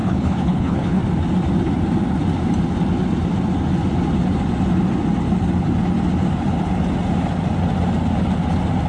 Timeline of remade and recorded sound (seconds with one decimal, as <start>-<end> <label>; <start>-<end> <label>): 0.0-1.0 remade; 1.0-8.9 recorded